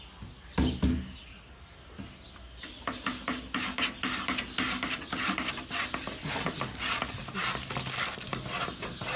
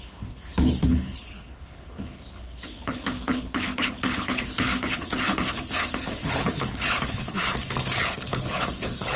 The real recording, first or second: first